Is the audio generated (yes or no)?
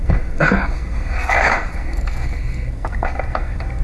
yes